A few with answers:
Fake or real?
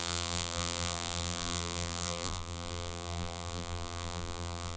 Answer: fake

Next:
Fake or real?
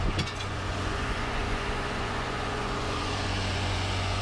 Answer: fake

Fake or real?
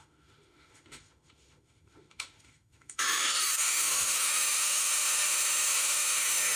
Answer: fake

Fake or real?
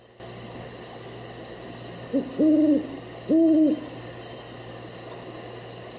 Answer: real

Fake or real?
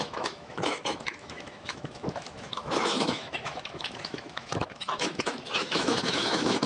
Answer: fake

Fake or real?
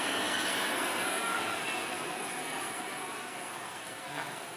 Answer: fake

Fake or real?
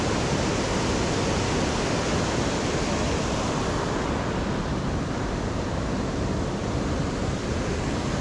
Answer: real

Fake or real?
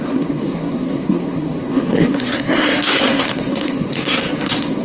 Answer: fake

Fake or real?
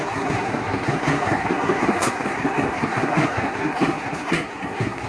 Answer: fake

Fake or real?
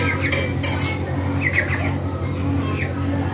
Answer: real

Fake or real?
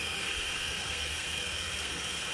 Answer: fake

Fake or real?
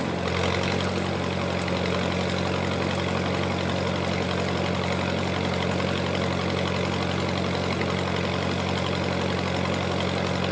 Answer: real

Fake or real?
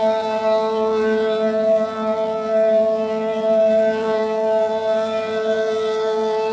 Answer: fake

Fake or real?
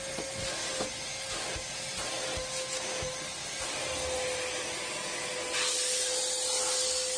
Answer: real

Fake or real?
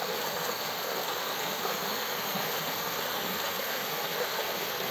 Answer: fake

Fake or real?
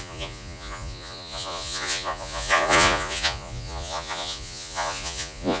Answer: fake